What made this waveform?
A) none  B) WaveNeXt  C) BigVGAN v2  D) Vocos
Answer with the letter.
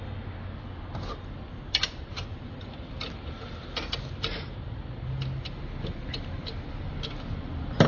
A